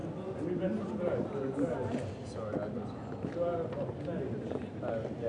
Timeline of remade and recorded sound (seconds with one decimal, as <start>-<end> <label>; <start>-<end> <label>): 0.0-5.3 recorded